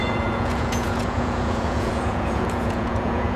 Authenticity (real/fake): fake